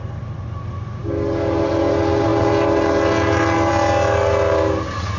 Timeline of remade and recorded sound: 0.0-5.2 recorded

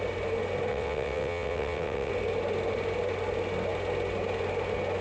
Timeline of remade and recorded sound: 0.0-0.7 recorded; 0.7-2.1 remade; 2.1-5.0 recorded

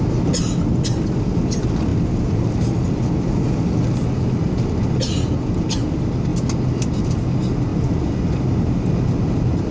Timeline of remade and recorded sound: 0.0-9.7 recorded

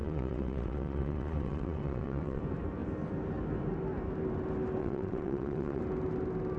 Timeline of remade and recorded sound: 0.0-2.4 remade; 2.4-4.8 recorded; 4.8-5.8 remade; 5.8-6.6 recorded